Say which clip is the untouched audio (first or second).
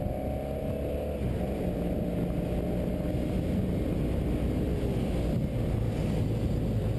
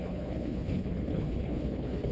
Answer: first